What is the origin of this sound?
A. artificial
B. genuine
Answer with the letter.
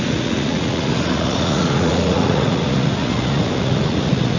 A